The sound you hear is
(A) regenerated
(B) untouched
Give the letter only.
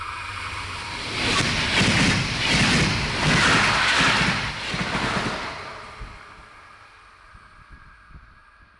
B